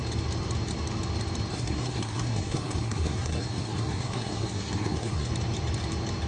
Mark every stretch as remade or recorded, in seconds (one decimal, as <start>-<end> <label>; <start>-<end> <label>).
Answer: 0.0-1.5 recorded; 1.5-5.3 remade; 5.3-6.3 recorded